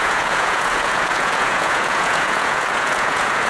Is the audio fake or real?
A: fake